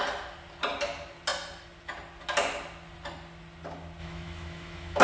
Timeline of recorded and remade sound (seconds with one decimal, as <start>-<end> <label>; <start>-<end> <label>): 0.0-4.0 recorded; 4.0-5.0 remade